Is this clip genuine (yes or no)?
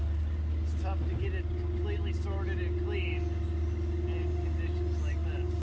yes